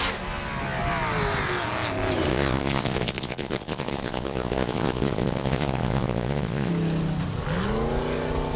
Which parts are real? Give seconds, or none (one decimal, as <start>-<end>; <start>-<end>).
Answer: 0.0-2.3; 6.7-8.6